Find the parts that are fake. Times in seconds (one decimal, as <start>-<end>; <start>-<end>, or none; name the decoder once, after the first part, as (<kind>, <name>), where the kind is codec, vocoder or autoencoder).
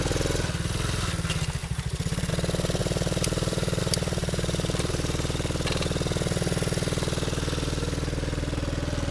1.6-2.3 (vocoder, BigVGAN v2); 2.8-3.8; 4.2-4.9